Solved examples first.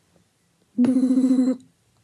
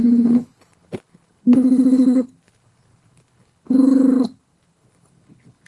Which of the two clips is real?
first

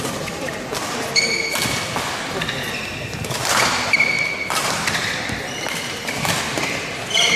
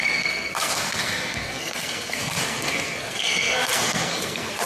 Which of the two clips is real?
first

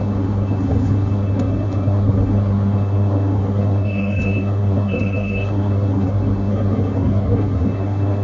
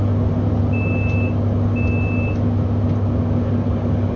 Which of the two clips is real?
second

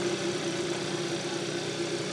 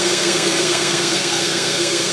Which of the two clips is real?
first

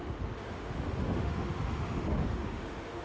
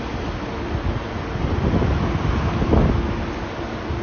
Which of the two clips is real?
second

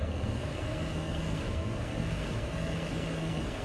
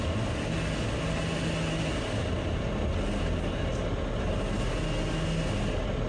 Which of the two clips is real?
second